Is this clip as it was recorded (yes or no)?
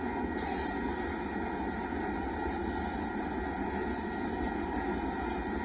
yes